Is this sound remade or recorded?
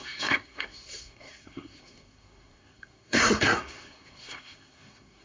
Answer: remade